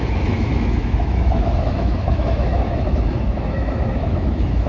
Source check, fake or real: fake